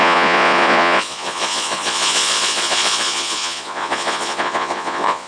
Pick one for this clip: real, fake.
fake